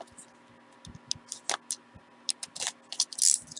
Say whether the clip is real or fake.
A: real